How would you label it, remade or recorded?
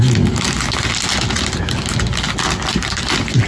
recorded